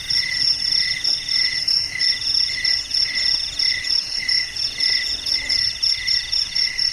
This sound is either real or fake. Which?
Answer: real